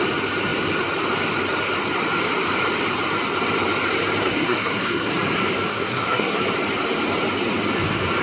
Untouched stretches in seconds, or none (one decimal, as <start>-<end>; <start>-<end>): 0.0-4.2; 5.1-5.7; 6.4-8.2